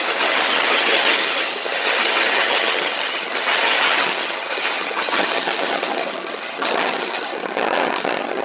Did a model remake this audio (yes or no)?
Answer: yes